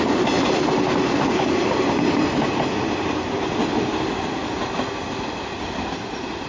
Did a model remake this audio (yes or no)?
no